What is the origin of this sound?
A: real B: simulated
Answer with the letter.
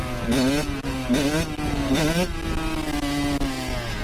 A